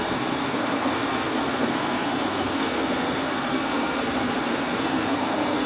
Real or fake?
fake